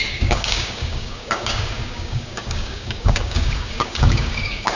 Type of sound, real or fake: fake